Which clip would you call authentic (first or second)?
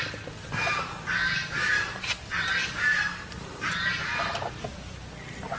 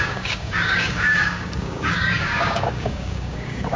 first